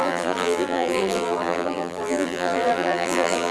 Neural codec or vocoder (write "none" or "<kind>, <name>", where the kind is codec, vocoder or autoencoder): vocoder, BigVGAN v2